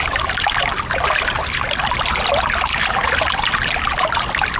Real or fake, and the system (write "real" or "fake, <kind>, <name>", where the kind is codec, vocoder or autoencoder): real